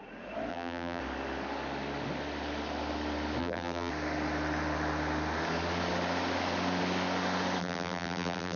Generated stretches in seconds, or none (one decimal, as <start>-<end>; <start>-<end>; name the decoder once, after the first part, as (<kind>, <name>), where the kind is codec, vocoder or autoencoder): 0.5-1.0 (vocoder, BigVGAN v2); 3.4-3.9; 7.6-8.6